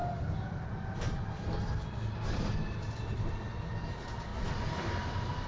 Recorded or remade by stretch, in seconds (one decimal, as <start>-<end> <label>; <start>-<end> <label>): 0.0-5.5 recorded